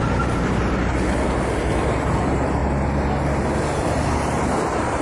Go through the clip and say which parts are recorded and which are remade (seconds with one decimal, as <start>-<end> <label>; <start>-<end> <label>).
0.0-0.9 remade; 0.9-1.6 recorded; 1.6-2.6 remade; 2.6-3.6 recorded; 3.6-5.0 remade